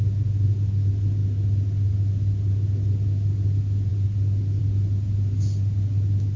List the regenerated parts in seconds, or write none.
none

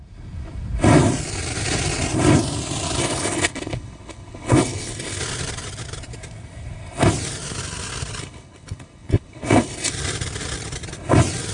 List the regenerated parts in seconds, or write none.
3.0-5.2 (codec, HILCodec); 8.2-9.9

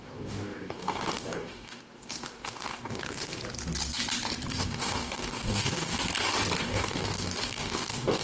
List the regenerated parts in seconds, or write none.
0.0-3.4 (codec, DAC); 4.5-6.0; 6.6-8.2

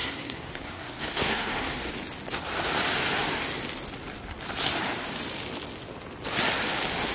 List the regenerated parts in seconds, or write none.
0.0-1.9 (codec, SNAC)

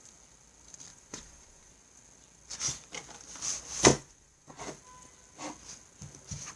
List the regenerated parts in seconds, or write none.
0.9-1.7 (vocoder, Vocos); 3.9-4.6

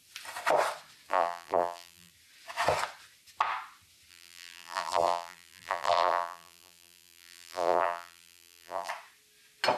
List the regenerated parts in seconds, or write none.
1.1-2.1 (vocoder, BigVGAN v2); 4.1-8.9

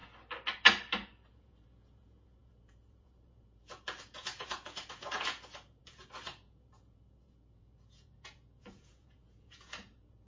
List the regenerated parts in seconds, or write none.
1.3-10.3 (vocoder, Vocos)